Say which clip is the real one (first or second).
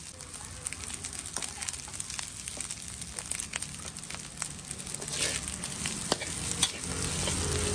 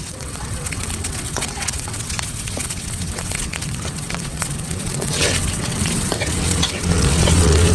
first